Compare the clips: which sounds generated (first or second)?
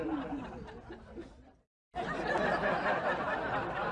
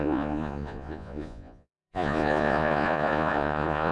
second